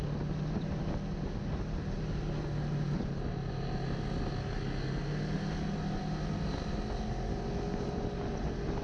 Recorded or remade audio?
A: recorded